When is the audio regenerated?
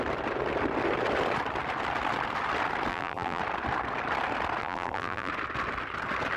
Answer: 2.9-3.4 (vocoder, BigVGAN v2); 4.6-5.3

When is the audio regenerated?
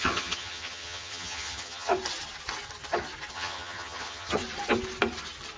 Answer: 0.0-1.9 (vocoder, HiFi-GAN); 3.3-4.4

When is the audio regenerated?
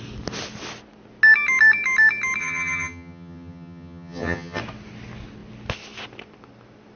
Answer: 2.4-4.6 (vocoder, HiFi-GAN)